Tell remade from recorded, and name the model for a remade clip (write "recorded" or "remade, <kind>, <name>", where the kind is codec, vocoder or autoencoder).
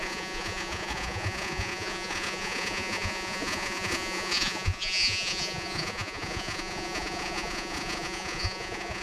remade, vocoder, Vocos